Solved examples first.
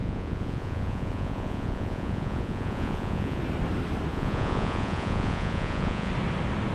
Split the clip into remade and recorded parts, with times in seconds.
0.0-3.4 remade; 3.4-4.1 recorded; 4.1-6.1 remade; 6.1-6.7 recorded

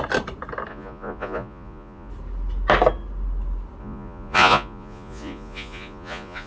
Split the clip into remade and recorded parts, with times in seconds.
0.0-0.7 recorded; 0.7-2.1 remade; 2.1-3.8 recorded; 3.8-6.5 remade

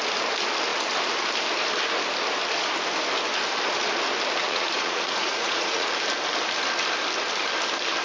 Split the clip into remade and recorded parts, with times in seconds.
0.0-4.4 recorded; 4.4-5.9 remade; 5.9-8.0 recorded